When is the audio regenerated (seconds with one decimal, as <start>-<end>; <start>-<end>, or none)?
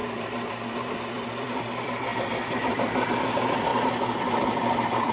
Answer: 0.0-3.7; 4.2-5.1